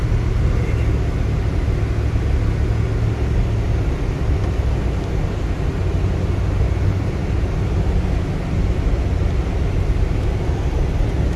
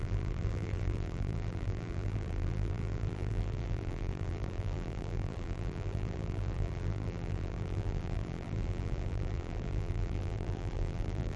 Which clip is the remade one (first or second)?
second